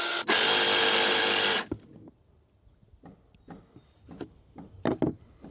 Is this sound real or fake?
real